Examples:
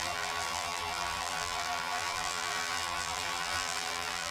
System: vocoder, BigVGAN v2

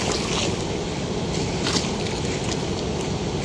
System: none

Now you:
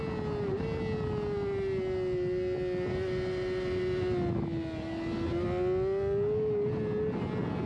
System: none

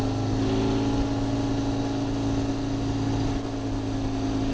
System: none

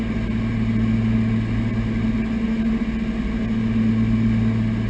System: none